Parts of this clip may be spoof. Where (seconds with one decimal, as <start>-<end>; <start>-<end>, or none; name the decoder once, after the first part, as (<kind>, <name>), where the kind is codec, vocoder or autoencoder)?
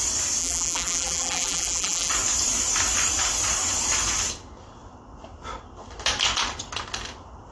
0.4-2.1 (vocoder, BigVGAN v2)